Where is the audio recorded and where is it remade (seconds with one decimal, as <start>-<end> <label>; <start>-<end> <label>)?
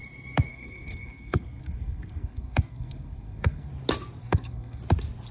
0.0-0.5 recorded; 0.5-3.7 remade; 3.7-4.2 recorded; 4.2-4.8 remade; 4.8-5.3 recorded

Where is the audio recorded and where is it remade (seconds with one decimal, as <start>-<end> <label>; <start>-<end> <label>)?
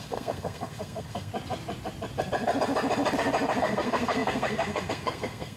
0.0-1.3 remade; 1.3-3.6 recorded; 3.6-5.6 remade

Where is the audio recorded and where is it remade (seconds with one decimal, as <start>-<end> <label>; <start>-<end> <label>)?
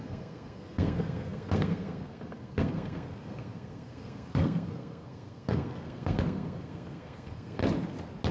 0.0-7.6 remade; 7.6-8.3 recorded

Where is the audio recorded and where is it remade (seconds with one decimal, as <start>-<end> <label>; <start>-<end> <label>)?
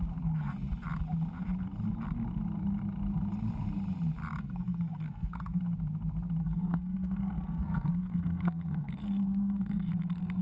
0.0-4.4 recorded; 4.4-5.6 remade; 5.6-6.4 recorded; 6.4-9.9 remade; 9.9-10.4 recorded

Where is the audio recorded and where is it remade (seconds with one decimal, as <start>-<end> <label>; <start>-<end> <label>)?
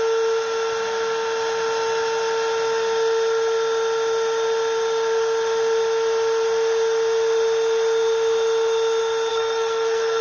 0.0-9.3 recorded; 9.3-10.2 remade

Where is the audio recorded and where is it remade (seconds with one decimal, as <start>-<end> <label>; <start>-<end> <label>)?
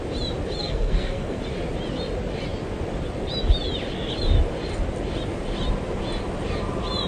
0.0-0.6 recorded; 0.6-1.4 remade; 1.4-7.1 recorded